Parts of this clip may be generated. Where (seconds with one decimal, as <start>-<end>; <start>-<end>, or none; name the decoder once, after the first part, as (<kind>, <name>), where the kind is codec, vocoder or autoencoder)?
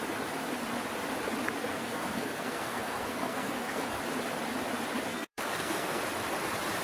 1.7-4.0 (codec, SNAC); 5.1-6.0